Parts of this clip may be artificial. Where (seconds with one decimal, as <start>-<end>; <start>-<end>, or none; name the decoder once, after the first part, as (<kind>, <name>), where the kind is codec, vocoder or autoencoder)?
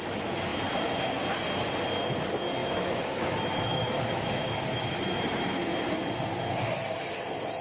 2.6-5.3 (autoencoder, DAC-VAE)